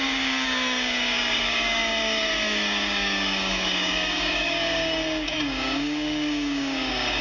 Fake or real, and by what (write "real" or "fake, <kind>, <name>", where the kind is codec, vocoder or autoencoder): fake, codec, DAC